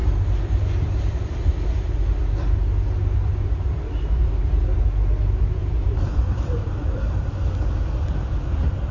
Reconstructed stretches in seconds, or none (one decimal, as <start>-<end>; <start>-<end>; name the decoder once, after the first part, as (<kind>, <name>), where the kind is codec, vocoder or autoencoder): 5.6-6.6 (vocoder, BigVGAN v2)